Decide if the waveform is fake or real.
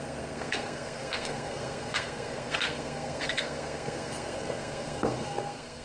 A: fake